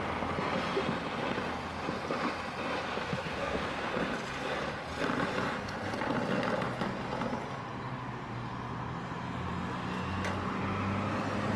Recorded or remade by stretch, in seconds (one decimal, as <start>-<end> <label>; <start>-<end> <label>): 0.0-2.9 recorded; 2.9-3.9 remade; 3.9-11.6 recorded